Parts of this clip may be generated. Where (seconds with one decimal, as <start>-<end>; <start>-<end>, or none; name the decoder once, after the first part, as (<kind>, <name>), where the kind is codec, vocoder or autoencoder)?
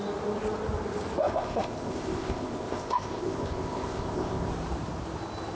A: 1.2-4.5 (codec, ZipCodec)